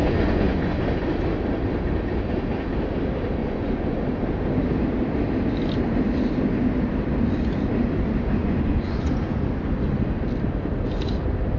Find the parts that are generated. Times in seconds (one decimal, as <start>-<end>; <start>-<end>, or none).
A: 0.0-0.8; 3.4-4.0; 8.4-9.1